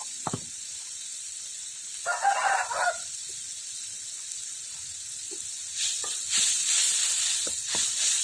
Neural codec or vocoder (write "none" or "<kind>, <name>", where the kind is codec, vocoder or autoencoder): none